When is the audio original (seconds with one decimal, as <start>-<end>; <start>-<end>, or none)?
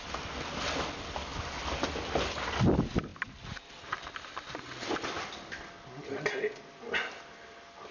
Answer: 0.0-7.9